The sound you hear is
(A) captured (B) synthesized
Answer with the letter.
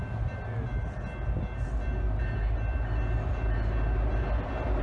A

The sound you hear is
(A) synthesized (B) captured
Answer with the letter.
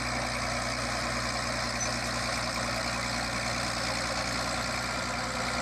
B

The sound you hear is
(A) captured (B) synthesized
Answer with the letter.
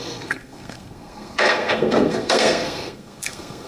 B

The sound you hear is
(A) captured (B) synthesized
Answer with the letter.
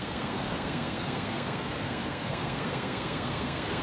B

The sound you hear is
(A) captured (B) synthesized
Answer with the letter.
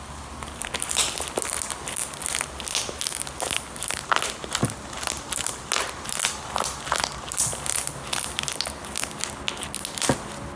A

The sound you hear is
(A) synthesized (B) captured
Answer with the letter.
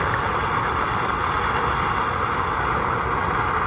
B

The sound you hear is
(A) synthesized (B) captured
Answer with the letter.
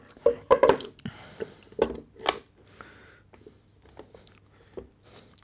B